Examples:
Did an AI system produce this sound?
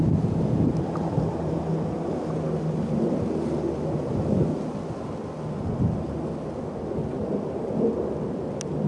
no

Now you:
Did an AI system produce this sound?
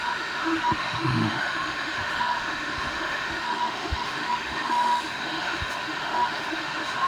yes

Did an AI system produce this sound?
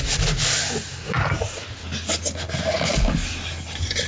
no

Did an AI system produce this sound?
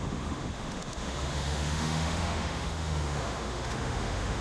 yes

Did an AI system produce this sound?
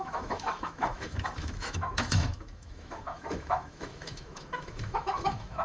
yes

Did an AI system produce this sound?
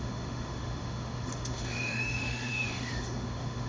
yes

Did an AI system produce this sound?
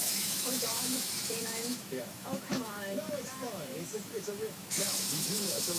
yes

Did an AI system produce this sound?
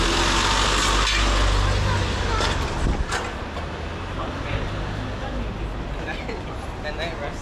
no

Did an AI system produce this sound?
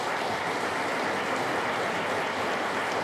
no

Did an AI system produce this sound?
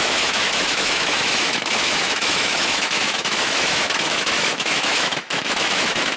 yes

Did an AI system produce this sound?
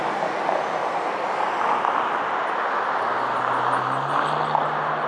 no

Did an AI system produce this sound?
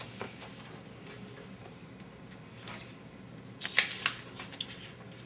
no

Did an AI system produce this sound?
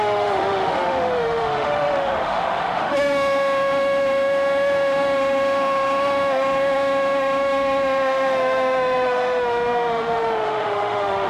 yes